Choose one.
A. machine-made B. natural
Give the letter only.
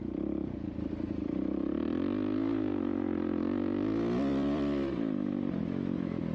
A